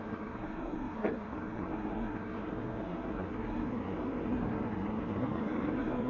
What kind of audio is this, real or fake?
fake